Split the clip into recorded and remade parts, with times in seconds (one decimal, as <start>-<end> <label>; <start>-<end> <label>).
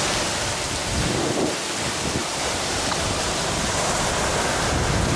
0.0-0.8 recorded; 0.8-1.6 remade; 1.6-2.2 recorded; 2.2-3.8 remade; 3.8-5.2 recorded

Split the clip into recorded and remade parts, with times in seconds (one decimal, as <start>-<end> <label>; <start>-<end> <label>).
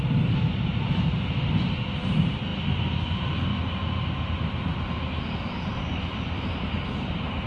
0.0-2.5 remade; 2.5-3.1 recorded; 3.1-3.5 remade; 3.5-5.3 recorded; 5.3-7.5 remade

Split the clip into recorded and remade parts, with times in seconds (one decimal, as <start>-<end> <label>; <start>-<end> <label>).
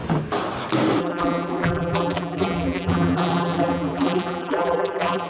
0.0-1.0 recorded; 1.0-5.3 remade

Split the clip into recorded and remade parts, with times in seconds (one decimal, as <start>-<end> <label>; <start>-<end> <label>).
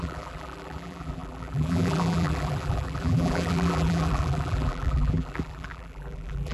0.0-6.5 remade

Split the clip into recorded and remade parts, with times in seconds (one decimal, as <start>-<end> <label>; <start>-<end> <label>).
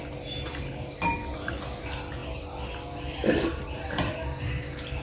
0.0-5.0 recorded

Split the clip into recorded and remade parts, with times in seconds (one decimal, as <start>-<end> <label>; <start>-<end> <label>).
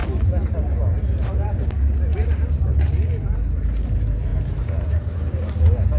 0.0-2.1 recorded; 2.1-2.7 remade; 2.7-4.3 recorded; 4.3-5.6 remade; 5.6-6.0 recorded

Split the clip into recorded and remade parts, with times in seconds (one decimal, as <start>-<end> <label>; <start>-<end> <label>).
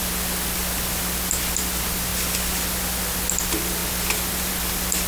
0.0-5.1 recorded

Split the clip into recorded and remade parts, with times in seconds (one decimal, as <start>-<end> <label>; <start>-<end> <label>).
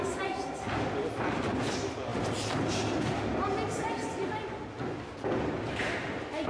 0.0-6.5 recorded